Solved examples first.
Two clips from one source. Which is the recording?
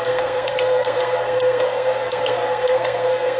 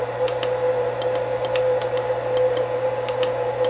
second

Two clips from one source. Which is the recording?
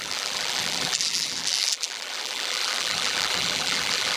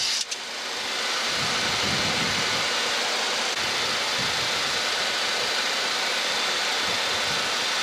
second